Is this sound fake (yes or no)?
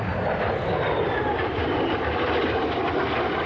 no